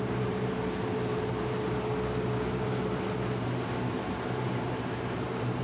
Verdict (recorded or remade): recorded